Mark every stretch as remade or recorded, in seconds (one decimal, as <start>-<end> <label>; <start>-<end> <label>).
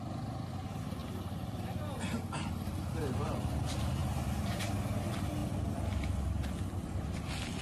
0.0-7.6 recorded